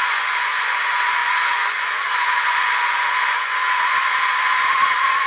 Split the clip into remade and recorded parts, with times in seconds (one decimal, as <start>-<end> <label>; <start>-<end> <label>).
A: 0.0-5.3 remade